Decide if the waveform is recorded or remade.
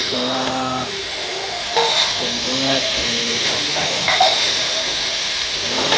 remade